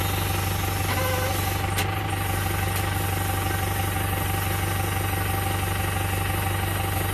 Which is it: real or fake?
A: real